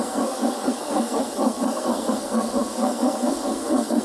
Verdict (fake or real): fake